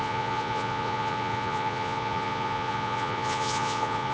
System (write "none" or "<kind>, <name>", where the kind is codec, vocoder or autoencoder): vocoder, Vocos